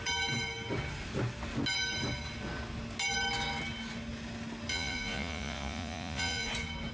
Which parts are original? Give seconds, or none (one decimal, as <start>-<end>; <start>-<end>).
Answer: 0.0-4.7; 6.5-6.9